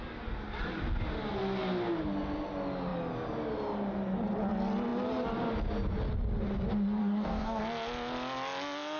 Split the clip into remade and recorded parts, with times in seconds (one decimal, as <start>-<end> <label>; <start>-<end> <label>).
0.0-7.0 recorded; 7.0-7.6 remade; 7.6-9.0 recorded